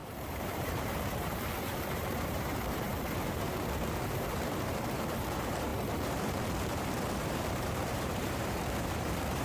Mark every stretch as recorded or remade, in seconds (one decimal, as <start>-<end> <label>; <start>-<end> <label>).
0.0-9.4 remade